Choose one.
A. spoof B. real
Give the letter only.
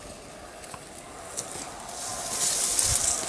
B